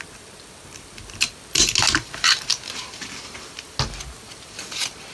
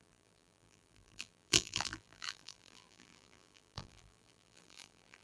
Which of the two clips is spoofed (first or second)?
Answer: second